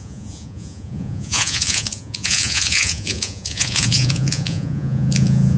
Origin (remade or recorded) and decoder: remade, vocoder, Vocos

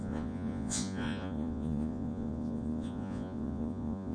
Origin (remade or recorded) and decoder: remade, vocoder, Vocos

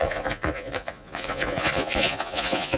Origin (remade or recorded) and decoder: remade, vocoder, Vocos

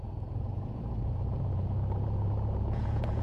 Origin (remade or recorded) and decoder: remade, vocoder, Vocos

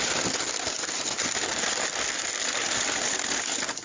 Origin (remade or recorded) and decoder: recorded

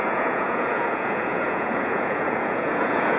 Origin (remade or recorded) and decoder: remade, vocoder, Vocos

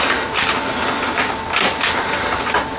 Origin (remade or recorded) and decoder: recorded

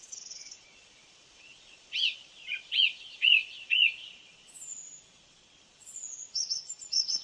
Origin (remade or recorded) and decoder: remade, vocoder, Vocos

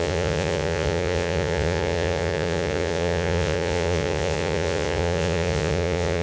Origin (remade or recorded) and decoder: remade, vocoder, Vocos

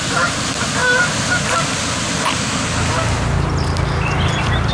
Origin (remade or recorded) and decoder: recorded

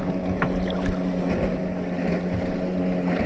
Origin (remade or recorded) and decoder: recorded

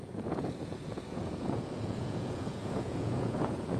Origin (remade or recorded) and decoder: remade, vocoder, Vocos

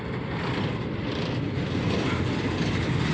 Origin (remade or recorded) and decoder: recorded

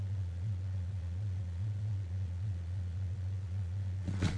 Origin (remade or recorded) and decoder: remade, vocoder, Vocos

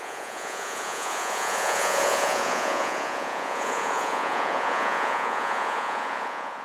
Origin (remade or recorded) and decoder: remade, vocoder, Vocos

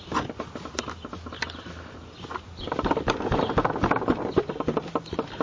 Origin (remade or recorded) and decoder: recorded